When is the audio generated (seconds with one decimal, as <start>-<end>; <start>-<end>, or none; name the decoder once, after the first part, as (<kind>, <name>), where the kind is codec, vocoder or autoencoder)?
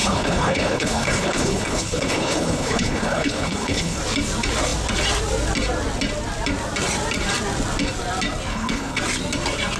0.0-4.0 (codec, HILCodec); 8.5-9.0